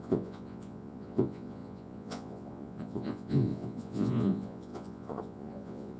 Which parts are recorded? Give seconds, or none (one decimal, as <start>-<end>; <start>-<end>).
none